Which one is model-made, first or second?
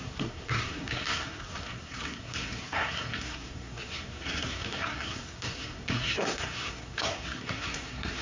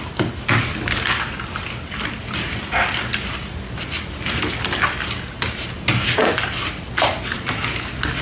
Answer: first